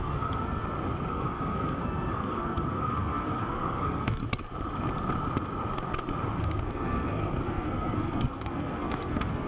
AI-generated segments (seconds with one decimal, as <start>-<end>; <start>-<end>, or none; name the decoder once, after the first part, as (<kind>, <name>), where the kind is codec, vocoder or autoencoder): 0.0-0.6 (codec, SNAC); 1.1-4.2; 6.4-9.5